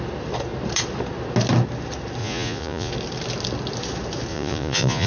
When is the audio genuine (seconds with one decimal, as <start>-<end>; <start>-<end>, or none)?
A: 0.0-2.2; 2.9-4.3